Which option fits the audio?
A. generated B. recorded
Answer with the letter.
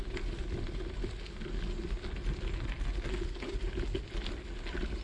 B